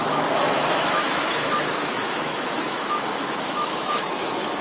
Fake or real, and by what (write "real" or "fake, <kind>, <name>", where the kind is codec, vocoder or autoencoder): fake, autoencoder, DAC-VAE